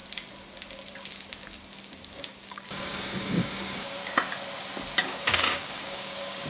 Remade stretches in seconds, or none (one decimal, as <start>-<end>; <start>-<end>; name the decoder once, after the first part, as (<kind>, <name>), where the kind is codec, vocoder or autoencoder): 1.8-4.0 (codec, DAC); 5.0-6.5